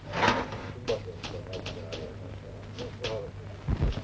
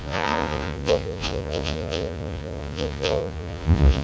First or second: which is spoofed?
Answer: second